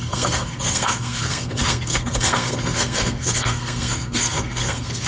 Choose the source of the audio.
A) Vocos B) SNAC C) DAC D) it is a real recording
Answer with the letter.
B